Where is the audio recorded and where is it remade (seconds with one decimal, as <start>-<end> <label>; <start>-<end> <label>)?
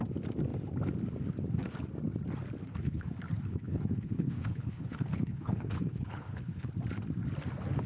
0.0-2.6 recorded; 2.6-3.1 remade; 3.1-3.5 recorded; 3.5-6.7 remade; 6.7-7.9 recorded